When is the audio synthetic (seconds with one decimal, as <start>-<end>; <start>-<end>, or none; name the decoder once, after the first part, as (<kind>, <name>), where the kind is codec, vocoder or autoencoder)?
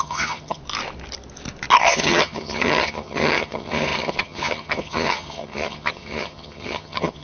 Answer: 0.0-0.6 (vocoder, HiFi-GAN); 1.8-7.2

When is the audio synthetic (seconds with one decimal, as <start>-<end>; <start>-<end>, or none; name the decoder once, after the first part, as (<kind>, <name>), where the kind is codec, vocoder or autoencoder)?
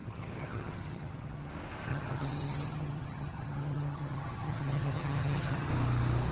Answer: 0.0-1.5 (vocoder, HiFi-GAN); 1.9-5.7